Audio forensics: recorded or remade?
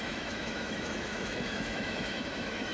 remade